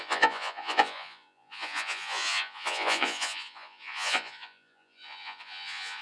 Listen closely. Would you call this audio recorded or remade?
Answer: remade